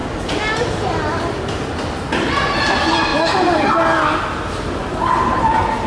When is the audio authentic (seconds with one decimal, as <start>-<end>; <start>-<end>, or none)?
0.0-3.1; 3.7-5.9